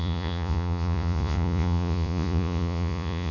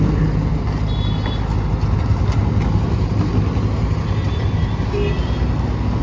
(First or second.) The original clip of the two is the second